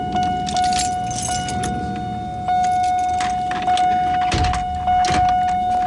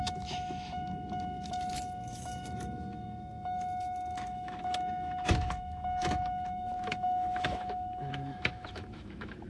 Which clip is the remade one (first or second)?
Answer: second